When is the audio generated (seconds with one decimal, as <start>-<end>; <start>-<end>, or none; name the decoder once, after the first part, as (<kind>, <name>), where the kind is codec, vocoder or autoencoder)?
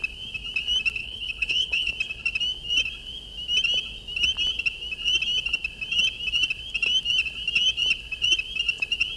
1.0-1.9 (codec, HILCodec)